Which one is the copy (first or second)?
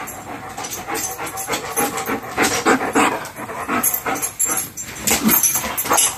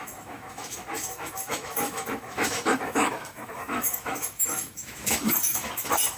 second